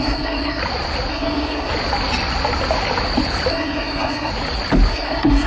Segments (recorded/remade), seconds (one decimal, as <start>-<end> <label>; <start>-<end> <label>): 0.0-0.6 remade; 0.6-1.1 recorded; 1.1-1.7 remade; 1.7-3.5 recorded; 3.5-4.3 remade; 4.3-4.9 recorded; 4.9-5.5 remade